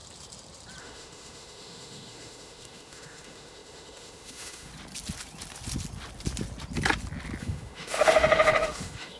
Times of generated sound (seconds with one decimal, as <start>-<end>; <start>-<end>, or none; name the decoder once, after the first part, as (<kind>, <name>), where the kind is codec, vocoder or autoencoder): 0.8-4.7 (autoencoder, DAC-VAE); 7.4-9.2